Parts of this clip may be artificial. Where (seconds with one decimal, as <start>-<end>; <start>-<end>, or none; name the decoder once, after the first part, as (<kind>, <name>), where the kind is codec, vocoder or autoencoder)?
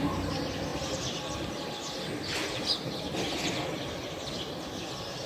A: none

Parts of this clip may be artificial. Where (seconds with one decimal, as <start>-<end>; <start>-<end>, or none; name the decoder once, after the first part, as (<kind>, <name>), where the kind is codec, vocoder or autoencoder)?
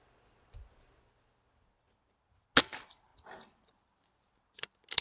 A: none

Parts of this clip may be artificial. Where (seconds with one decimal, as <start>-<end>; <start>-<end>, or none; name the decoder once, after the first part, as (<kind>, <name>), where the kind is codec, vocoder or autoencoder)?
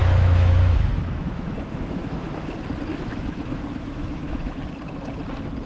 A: 0.0-2.5 (autoencoder, DAC-VAE); 2.9-4.6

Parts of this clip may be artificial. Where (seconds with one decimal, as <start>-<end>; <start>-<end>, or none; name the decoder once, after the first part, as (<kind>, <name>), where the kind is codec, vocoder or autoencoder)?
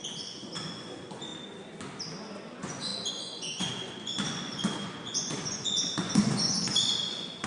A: 0.0-1.3 (vocoder, Vocos); 2.5-7.5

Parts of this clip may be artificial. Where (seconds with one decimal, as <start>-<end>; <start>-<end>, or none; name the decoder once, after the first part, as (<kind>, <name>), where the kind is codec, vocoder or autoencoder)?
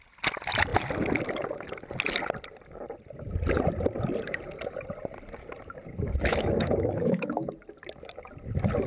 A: 6.3-7.5 (autoencoder, DAC-VAE)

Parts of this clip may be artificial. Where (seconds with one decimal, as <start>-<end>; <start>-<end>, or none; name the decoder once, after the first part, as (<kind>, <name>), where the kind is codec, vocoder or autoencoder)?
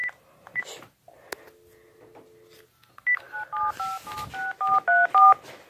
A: 0.0-0.6 (vocoder, BigVGAN v2)